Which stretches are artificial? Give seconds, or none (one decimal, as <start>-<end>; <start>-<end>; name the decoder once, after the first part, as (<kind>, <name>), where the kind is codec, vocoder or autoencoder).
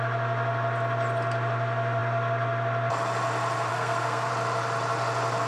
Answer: 3.7-4.3 (codec, SNAC)